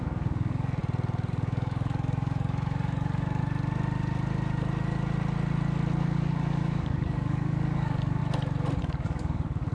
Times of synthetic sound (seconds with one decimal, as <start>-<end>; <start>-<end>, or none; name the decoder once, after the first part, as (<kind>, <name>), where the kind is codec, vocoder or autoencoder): 0.0-0.8 (codec, DAC); 1.3-3.4; 6.0-8.2; 8.8-9.7